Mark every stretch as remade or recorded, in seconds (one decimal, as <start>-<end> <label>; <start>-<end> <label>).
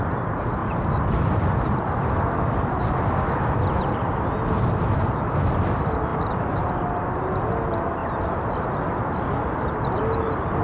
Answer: 0.0-10.6 recorded